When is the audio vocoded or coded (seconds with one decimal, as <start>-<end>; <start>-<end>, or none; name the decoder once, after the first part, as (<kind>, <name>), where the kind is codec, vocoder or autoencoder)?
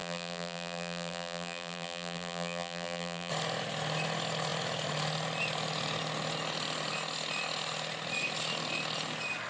0.0-3.3 (vocoder, BigVGAN v2)